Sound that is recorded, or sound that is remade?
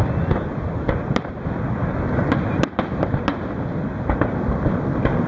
recorded